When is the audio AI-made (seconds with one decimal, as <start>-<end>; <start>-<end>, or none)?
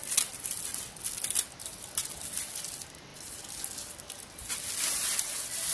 none